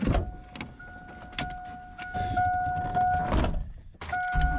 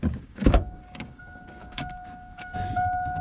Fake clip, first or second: second